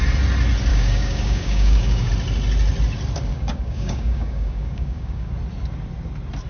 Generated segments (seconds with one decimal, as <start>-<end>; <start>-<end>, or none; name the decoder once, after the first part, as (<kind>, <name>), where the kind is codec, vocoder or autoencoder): 0.7-2.1 (codec, DAC); 3.3-5.3